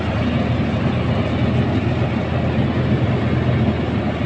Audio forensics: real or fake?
real